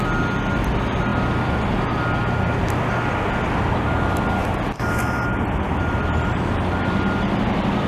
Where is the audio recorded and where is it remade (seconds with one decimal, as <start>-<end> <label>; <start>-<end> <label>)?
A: 0.0-7.9 recorded